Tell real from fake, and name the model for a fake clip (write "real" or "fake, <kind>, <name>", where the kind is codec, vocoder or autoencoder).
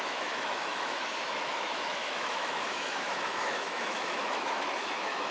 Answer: fake, autoencoder, DAC-VAE